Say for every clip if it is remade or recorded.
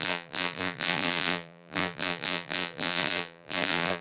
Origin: remade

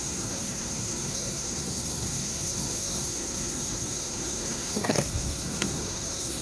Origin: remade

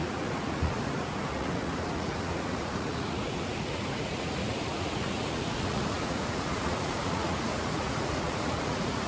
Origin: remade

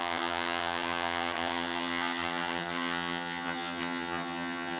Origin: remade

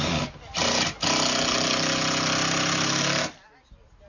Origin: recorded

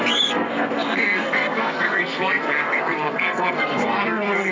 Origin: remade